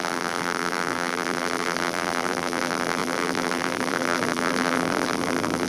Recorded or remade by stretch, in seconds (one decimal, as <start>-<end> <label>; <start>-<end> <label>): 0.0-5.7 remade